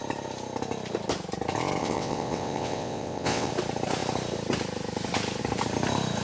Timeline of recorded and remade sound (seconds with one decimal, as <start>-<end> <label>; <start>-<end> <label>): 0.0-1.8 recorded; 1.8-3.5 remade; 3.5-6.2 recorded